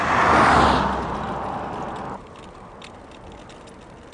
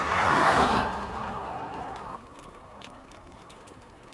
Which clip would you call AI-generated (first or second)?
second